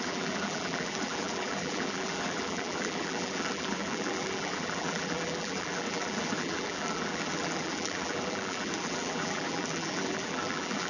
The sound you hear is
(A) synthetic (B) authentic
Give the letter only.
A